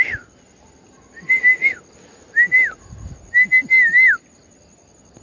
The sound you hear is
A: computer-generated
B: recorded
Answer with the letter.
B